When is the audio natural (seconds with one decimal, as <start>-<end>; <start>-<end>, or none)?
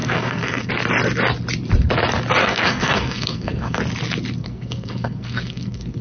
0.7-2.4; 3.8-4.4